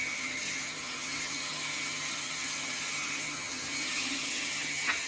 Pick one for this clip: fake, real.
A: fake